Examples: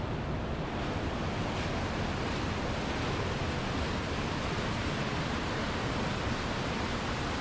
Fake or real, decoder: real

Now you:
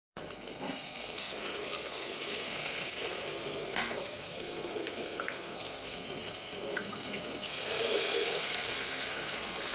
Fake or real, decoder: fake, codec, SNAC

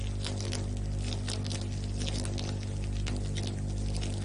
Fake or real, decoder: real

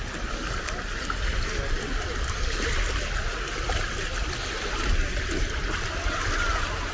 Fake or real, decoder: real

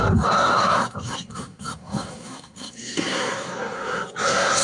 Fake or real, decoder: fake, codec, SNAC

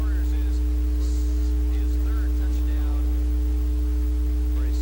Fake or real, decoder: real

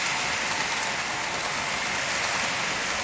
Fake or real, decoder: real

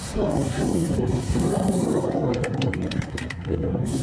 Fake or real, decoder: fake, codec, SNAC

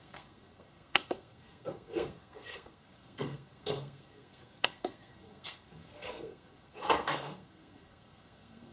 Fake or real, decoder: fake, codec, SNAC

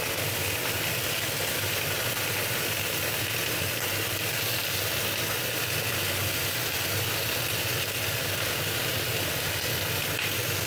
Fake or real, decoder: real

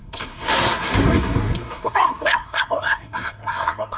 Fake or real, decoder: fake, codec, SNAC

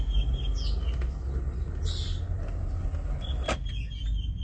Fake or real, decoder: real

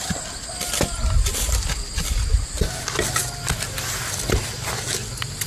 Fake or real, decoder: real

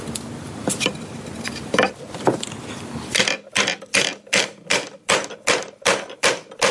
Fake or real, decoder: real